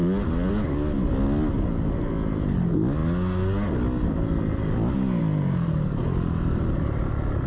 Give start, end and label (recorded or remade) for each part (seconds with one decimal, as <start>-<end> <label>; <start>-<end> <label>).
0.0-7.5 recorded